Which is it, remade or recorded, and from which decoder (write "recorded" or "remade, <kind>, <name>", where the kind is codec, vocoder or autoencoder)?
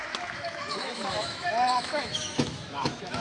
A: remade, autoencoder, DAC-VAE